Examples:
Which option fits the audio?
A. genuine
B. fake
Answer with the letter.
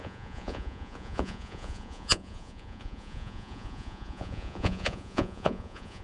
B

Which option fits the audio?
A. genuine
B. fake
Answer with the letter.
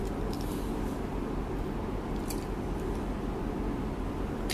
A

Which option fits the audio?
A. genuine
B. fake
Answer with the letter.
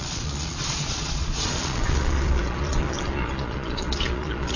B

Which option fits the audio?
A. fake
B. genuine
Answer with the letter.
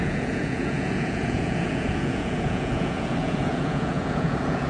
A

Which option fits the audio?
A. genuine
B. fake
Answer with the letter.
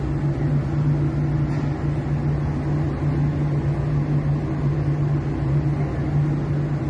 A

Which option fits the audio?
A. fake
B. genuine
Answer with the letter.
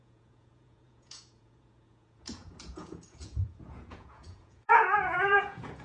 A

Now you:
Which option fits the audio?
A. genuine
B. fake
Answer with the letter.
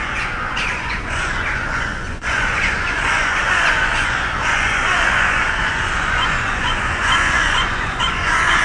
B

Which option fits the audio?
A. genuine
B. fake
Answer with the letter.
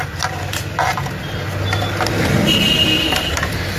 A